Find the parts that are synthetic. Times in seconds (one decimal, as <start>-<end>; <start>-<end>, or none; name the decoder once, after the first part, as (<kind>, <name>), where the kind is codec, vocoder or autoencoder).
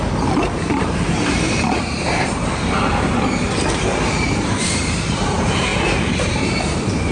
0.0-2.4 (vocoder, BigVGAN v2); 3.7-7.1